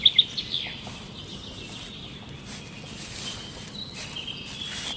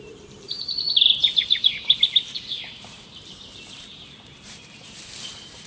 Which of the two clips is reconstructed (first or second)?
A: second